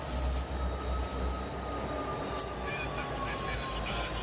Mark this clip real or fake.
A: real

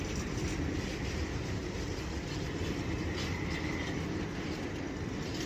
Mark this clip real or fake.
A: real